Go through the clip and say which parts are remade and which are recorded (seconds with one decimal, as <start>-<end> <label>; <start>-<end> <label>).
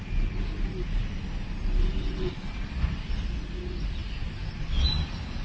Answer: 0.0-5.4 recorded